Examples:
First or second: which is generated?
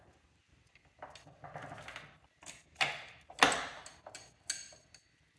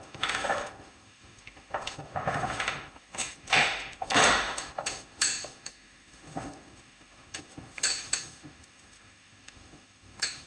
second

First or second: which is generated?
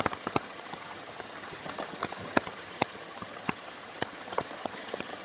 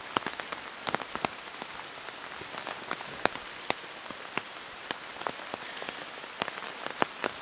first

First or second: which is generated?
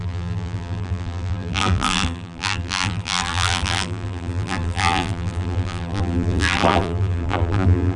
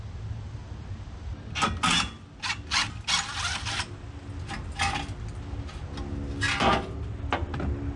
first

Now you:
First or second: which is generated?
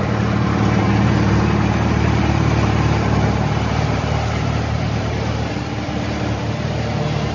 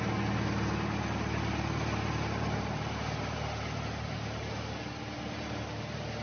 first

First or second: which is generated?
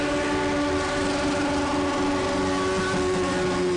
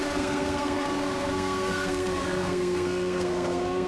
second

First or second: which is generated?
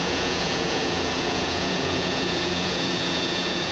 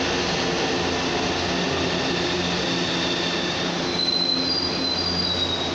first